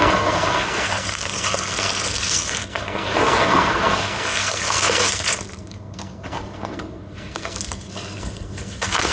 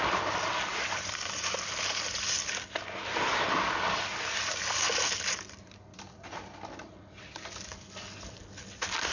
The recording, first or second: second